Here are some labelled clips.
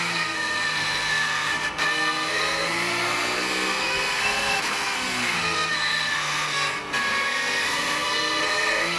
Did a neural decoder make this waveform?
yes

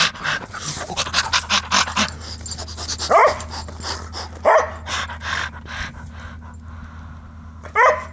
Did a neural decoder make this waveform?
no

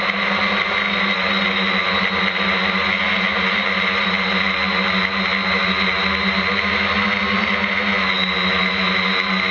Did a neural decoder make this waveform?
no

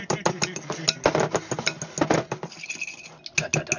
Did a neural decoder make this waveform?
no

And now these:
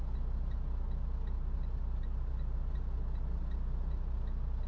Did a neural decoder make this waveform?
no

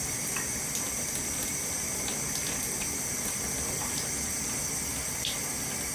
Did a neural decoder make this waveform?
no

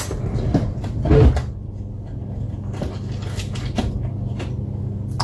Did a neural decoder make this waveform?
no